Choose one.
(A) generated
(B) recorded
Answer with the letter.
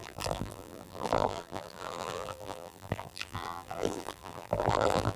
A